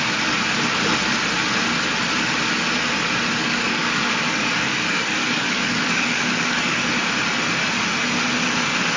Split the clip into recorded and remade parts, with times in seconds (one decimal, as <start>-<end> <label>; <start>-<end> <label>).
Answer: 0.0-3.4 recorded; 3.4-6.8 remade; 6.8-9.0 recorded